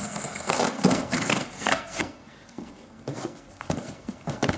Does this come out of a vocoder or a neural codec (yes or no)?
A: yes